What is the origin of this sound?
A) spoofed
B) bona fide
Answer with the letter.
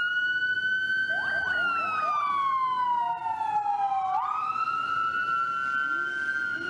B